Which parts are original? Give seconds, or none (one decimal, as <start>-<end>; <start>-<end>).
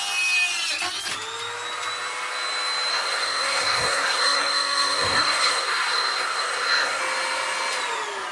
0.0-2.9; 7.0-8.3